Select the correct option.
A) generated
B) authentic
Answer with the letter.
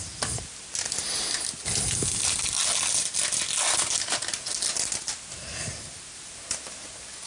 B